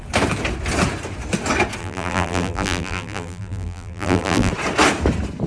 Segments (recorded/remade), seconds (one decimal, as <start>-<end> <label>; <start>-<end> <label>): 0.0-1.8 recorded; 1.8-4.5 remade; 4.5-5.5 recorded